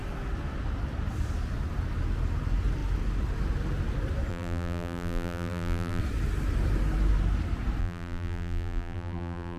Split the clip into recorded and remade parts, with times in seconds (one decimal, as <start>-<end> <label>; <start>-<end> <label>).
0.0-4.3 recorded; 4.3-6.0 remade; 6.0-7.8 recorded; 7.8-9.6 remade